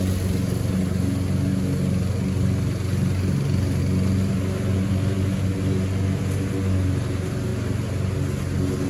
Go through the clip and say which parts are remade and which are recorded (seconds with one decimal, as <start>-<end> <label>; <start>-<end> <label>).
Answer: 0.0-8.9 recorded